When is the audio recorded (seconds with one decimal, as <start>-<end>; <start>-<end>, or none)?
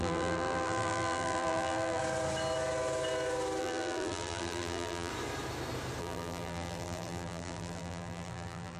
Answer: 2.0-3.6; 5.1-6.0